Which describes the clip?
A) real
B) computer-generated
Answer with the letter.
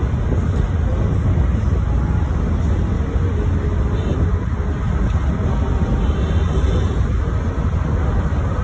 A